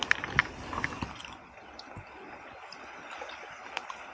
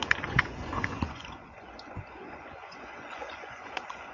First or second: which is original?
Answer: first